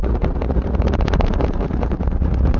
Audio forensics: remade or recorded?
remade